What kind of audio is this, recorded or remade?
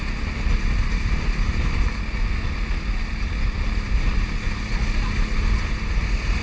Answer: recorded